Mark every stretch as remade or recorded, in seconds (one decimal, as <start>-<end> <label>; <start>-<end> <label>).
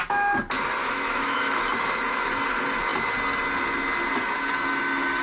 0.0-0.8 recorded; 0.8-1.6 remade; 1.6-5.2 recorded